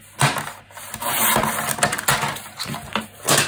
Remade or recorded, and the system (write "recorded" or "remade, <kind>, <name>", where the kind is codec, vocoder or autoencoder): recorded